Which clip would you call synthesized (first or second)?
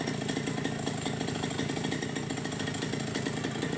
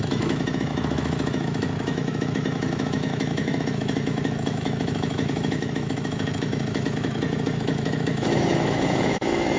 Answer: second